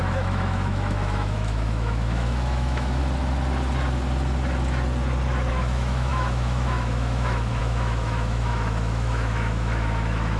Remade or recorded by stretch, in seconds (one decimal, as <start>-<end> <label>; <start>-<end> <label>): 0.0-3.0 remade; 3.0-5.5 recorded; 5.5-10.4 remade